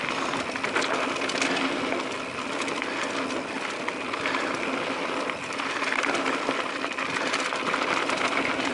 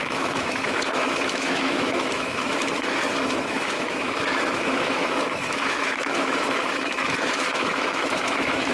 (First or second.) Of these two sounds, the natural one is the first